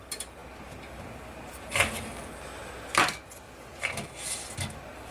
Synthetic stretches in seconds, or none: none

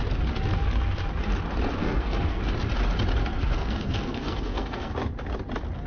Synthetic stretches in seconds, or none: 1.8-2.4 (codec, SNAC); 3.2-4.9